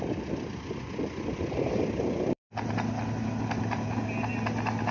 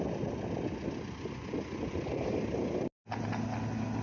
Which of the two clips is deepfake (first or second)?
first